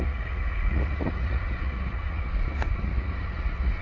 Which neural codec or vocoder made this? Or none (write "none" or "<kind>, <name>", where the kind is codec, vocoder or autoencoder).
vocoder, Vocos